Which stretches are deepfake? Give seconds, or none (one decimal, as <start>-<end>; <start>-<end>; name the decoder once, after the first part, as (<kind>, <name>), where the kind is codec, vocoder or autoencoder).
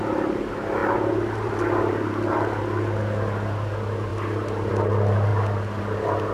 0.8-1.5 (vocoder, BigVGAN v2); 4.1-4.7